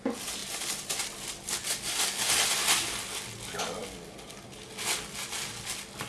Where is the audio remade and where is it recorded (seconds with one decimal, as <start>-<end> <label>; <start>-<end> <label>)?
0.0-6.1 recorded